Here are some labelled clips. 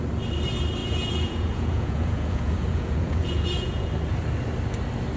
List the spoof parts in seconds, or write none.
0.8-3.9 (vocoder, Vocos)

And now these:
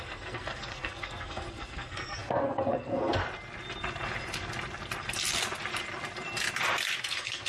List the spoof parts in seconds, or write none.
0.0-3.2 (codec, SNAC); 7.0-7.5

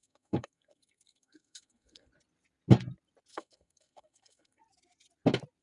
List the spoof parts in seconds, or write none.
0.0-2.1 (codec, SNAC); 3.3-4.6